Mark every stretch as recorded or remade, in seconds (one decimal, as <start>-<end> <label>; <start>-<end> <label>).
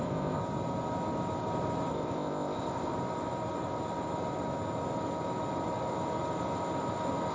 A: 0.0-0.4 remade; 0.4-1.9 recorded; 1.9-2.9 remade; 2.9-7.3 recorded